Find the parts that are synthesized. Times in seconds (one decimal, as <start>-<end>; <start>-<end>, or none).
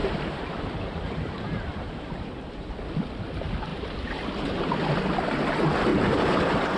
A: 0.0-2.7; 5.9-6.8